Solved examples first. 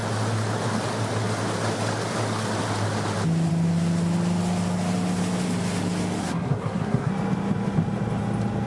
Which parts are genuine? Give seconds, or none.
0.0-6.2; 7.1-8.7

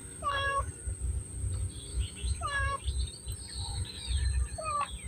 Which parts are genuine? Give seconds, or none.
0.7-1.9; 2.8-3.7; 4.2-5.1

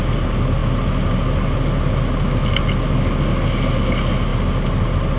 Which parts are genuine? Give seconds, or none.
0.0-5.2

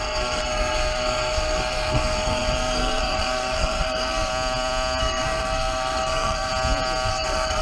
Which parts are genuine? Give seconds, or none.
4.3-5.0; 6.5-7.1

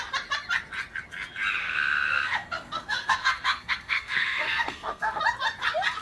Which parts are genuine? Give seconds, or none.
0.0-1.6; 5.2-6.0

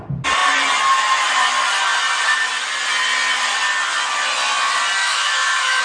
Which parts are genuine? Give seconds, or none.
0.0-5.0

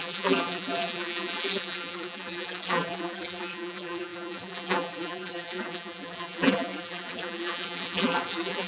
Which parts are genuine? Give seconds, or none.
none